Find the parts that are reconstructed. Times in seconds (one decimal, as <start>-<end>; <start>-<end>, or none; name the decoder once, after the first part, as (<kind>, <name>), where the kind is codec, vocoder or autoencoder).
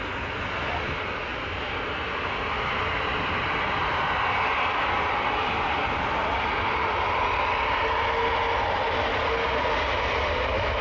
none